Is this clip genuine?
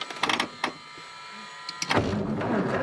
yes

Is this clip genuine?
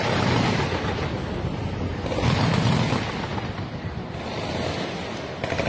yes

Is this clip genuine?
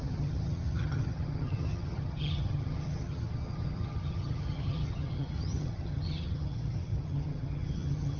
no